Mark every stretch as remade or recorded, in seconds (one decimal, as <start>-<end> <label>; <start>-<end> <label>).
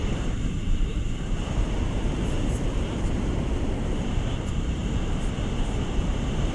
0.0-4.8 remade; 4.8-5.5 recorded; 5.5-6.5 remade